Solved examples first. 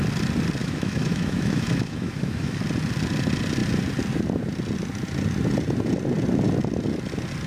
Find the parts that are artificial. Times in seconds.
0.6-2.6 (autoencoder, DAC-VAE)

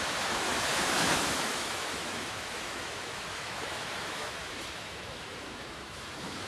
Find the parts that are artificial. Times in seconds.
0.0-6.5 (autoencoder, DAC-VAE)

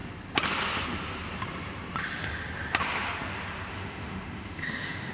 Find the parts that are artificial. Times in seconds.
3.7-5.1 (autoencoder, DAC-VAE)

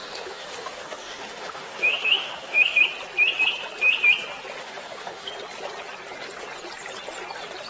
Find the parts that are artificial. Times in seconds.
0.0-2.8 (autoencoder, DAC-VAE); 4.6-5.3

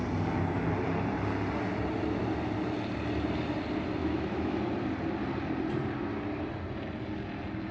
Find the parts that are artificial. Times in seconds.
4.0-4.6 (autoencoder, DAC-VAE)

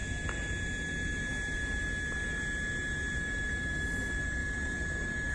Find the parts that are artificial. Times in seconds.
3.2-5.3 (autoencoder, DAC-VAE)